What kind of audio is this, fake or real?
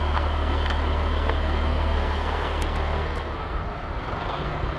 fake